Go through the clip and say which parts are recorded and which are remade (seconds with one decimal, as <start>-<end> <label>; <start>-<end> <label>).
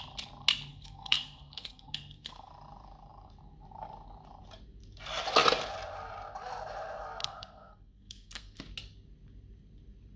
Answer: 0.0-0.7 recorded; 0.7-2.5 remade; 2.5-7.2 recorded; 7.2-8.6 remade; 8.6-10.2 recorded